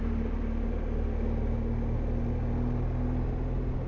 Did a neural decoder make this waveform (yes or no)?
no